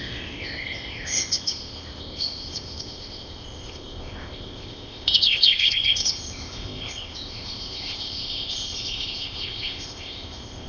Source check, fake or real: fake